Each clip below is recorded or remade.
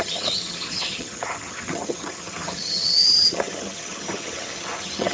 remade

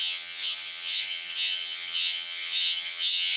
remade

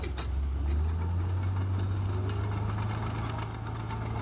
recorded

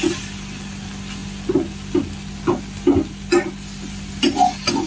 recorded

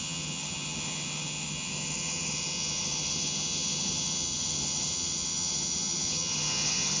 remade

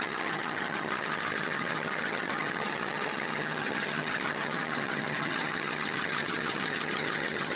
remade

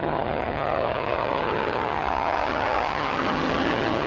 remade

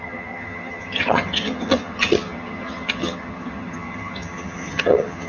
remade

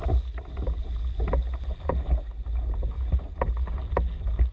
recorded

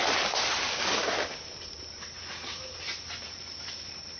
recorded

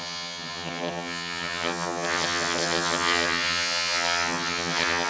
remade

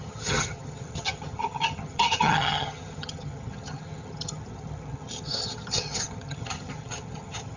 remade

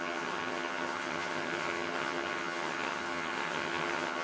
remade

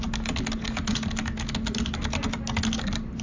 recorded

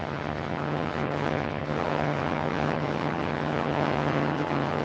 remade